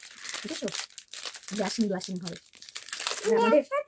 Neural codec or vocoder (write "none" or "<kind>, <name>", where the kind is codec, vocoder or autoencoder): none